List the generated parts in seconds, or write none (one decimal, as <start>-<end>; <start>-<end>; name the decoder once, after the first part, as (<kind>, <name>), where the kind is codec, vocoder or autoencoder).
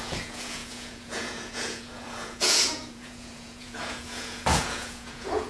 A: 0.0-5.5 (vocoder, Vocos)